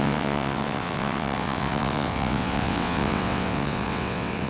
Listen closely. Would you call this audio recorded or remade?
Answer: remade